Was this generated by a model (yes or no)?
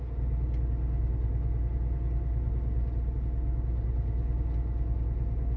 no